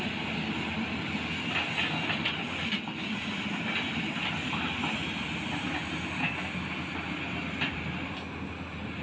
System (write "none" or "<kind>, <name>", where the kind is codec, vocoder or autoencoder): none